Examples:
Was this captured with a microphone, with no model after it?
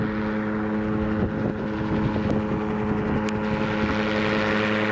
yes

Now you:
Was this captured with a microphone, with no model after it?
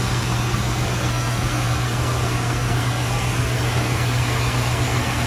no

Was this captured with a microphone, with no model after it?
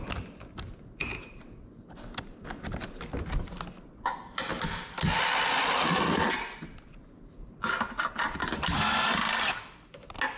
yes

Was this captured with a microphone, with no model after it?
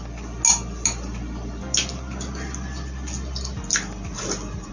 yes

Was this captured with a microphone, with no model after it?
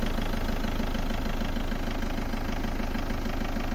yes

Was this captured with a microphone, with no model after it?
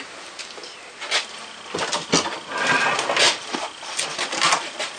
yes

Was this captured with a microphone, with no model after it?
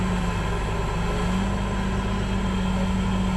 yes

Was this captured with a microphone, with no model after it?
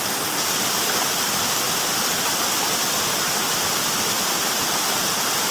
yes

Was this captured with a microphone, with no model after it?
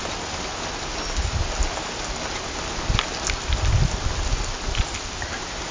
yes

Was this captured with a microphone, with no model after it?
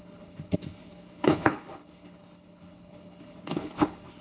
no